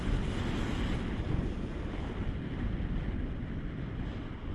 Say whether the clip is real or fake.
real